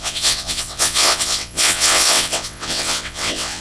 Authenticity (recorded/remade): remade